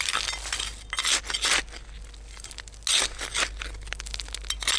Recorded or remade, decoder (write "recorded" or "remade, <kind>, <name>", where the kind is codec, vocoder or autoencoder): recorded